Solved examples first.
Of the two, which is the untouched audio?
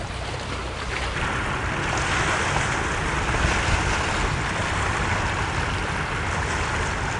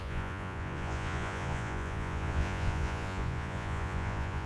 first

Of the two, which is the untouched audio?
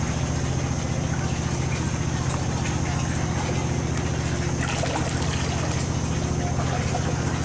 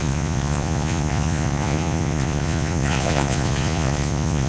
first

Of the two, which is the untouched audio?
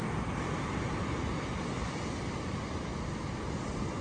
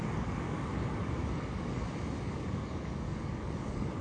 first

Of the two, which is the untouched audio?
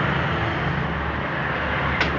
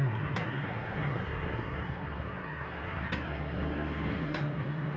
first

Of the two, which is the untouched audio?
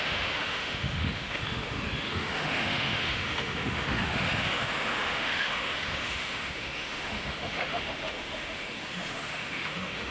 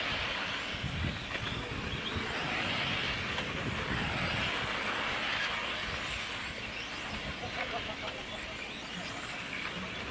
second